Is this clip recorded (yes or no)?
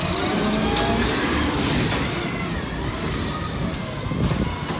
yes